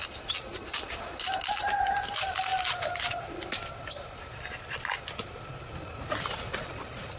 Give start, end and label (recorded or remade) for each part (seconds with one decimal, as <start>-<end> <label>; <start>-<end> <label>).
0.0-7.2 recorded